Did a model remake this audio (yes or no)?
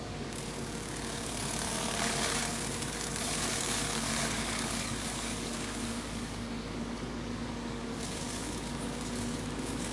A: yes